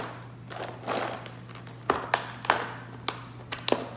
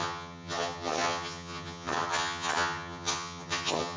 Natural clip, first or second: first